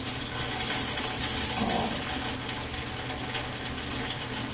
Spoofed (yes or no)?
no